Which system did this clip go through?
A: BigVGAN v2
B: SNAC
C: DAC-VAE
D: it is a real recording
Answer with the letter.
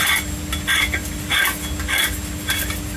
D